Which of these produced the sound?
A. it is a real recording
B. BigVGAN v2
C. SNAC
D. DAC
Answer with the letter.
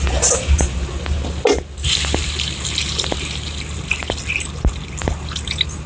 A